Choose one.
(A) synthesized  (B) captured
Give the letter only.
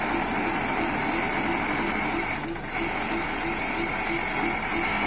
B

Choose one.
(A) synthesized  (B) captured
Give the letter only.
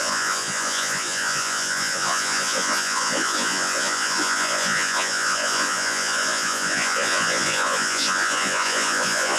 A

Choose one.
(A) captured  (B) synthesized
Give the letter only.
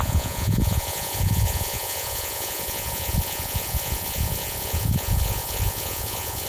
B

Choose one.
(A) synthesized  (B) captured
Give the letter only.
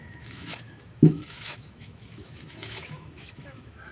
A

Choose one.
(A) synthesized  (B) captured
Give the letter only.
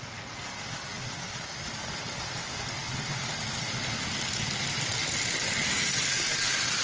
B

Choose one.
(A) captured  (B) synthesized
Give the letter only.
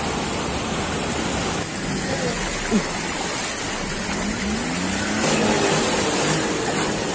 A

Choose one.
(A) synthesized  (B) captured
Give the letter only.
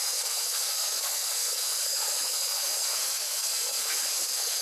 A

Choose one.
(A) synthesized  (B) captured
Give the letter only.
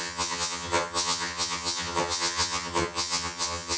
A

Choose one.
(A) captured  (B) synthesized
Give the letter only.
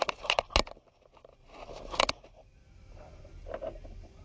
A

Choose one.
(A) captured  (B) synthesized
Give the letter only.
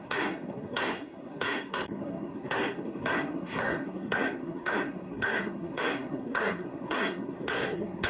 B